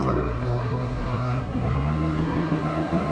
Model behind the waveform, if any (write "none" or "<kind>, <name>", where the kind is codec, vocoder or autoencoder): codec, SNAC